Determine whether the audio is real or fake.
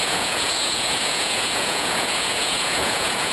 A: fake